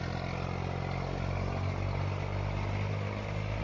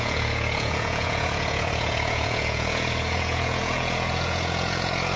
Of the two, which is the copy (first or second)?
second